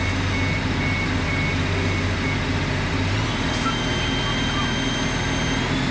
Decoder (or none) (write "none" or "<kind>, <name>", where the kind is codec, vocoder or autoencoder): none